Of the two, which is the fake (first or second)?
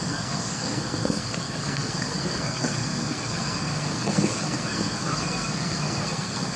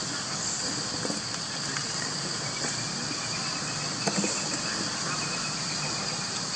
first